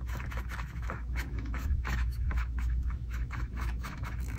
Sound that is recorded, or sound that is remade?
remade